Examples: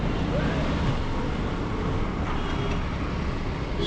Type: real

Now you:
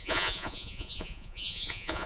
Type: fake